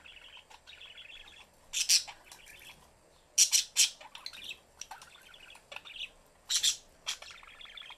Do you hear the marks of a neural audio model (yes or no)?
no